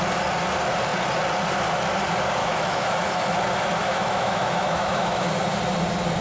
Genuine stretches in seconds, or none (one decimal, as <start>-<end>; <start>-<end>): 0.0-2.4; 3.3-3.8; 5.3-6.2